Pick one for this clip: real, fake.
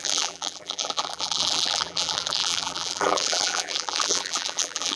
fake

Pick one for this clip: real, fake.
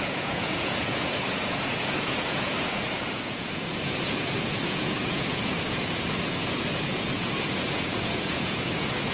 fake